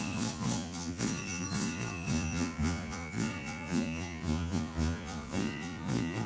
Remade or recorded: remade